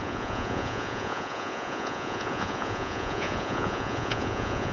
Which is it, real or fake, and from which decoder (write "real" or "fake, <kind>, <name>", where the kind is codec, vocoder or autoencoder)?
fake, vocoder, Vocos